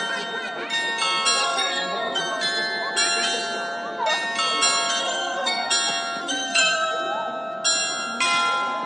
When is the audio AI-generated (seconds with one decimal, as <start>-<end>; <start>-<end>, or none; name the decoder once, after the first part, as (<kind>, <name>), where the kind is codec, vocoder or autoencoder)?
1.4-2.2 (codec, SNAC); 5.0-5.7; 6.2-6.9